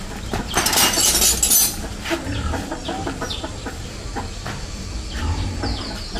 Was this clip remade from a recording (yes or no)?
no